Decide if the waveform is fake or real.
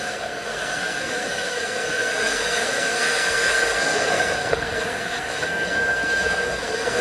fake